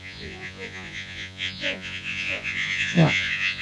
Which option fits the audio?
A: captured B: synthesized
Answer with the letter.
B